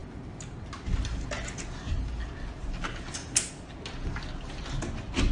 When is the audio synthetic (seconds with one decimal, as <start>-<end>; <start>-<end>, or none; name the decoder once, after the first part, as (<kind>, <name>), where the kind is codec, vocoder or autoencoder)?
0.0-0.7 (vocoder, BigVGAN v2); 2.6-3.5